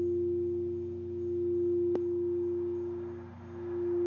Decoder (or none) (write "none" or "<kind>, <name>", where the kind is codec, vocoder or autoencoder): none